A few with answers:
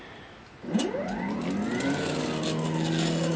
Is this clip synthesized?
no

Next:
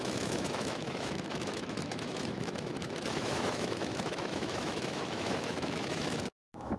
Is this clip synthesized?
yes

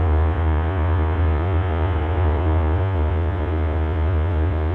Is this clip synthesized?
yes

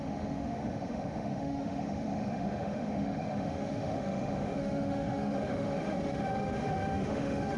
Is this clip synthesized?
yes